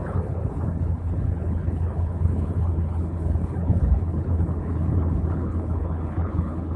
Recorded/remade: remade